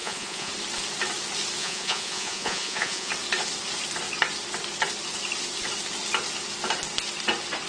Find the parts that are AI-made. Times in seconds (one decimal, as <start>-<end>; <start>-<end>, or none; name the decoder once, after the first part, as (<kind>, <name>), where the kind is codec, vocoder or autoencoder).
0.0-0.5 (vocoder, Vocos); 1.6-3.1